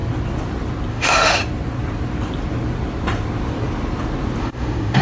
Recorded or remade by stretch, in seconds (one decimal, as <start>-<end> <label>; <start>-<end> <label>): 0.0-0.9 recorded; 0.9-1.4 remade; 1.4-4.4 recorded; 4.4-5.0 remade